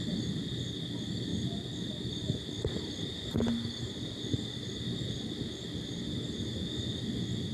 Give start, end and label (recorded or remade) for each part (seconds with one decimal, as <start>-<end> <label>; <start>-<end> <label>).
0.0-7.5 recorded